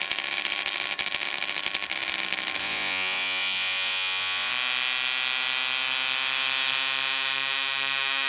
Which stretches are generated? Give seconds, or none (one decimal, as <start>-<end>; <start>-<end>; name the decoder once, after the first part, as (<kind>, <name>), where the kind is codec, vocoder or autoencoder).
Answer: 2.6-4.5 (vocoder, Vocos)